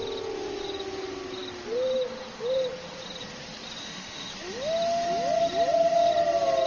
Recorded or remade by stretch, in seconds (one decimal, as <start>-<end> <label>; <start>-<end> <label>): 0.0-3.8 recorded; 3.8-4.3 remade; 4.3-6.7 recorded